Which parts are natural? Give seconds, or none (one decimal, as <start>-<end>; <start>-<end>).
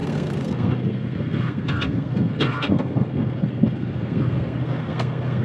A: none